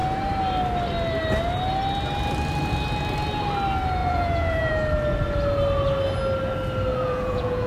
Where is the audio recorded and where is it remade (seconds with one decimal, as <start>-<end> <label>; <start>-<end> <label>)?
0.0-4.0 recorded; 4.0-4.7 remade; 4.7-6.9 recorded; 6.9-7.7 remade